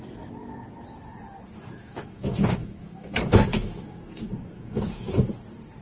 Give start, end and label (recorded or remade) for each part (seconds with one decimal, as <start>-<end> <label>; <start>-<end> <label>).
0.0-1.8 recorded; 1.8-5.3 remade; 5.3-5.8 recorded